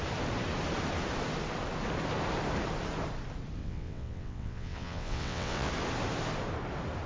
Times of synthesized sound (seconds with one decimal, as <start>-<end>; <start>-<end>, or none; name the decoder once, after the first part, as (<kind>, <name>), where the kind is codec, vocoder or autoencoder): 3.6-5.7 (vocoder, WaveNeXt)